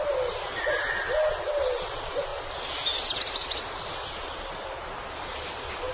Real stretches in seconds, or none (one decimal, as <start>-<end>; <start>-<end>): 0.0-5.9